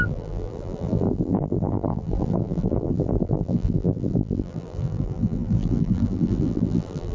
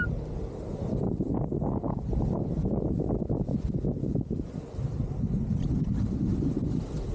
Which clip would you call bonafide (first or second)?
second